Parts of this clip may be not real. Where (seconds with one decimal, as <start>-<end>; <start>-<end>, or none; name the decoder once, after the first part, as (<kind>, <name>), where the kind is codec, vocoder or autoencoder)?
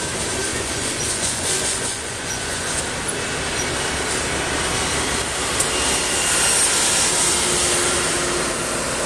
0.5-2.8 (vocoder, Vocos)